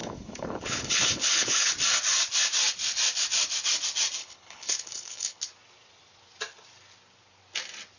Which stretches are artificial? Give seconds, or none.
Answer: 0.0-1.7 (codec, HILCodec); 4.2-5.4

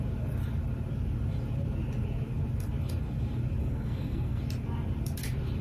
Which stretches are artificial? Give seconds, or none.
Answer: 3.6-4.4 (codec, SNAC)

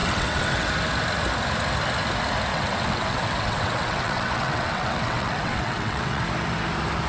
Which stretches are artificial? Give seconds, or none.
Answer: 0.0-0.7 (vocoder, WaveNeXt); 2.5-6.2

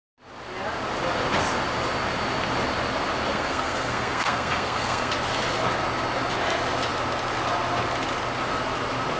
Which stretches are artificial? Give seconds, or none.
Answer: 3.3-5.1 (codec, SNAC)